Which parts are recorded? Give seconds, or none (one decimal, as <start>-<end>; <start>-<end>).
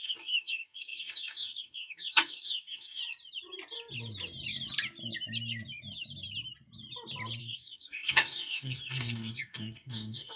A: 3.0-7.4